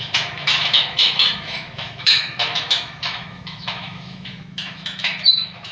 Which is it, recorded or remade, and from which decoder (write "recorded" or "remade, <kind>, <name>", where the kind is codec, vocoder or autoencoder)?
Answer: remade, autoencoder, DAC-VAE